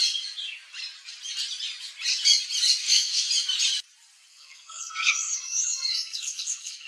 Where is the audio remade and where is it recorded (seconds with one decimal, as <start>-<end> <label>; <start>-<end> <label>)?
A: 0.0-2.8 recorded; 2.8-3.3 remade; 3.3-4.3 recorded; 4.3-6.9 remade